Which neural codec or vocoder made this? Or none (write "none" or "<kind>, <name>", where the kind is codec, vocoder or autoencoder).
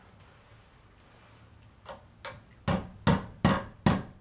none